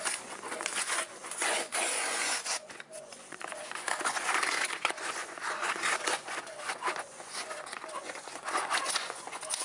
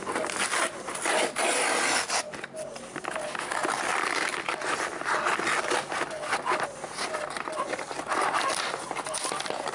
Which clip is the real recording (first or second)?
second